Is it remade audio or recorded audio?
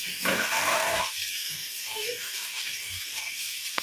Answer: remade